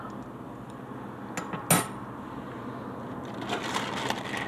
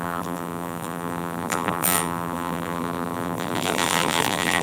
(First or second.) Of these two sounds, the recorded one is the first